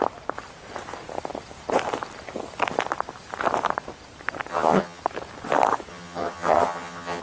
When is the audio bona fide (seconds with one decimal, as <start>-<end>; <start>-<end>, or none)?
0.0-4.5; 5.0-5.9